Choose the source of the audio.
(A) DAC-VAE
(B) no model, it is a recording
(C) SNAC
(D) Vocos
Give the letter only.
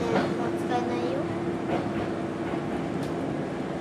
B